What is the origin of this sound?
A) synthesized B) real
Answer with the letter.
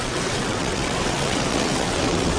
A